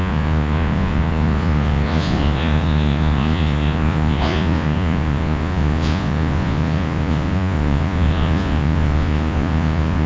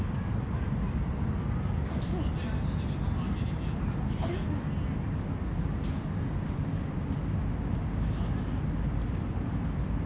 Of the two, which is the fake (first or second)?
first